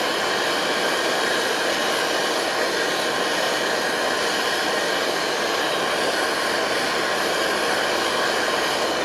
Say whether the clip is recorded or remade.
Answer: recorded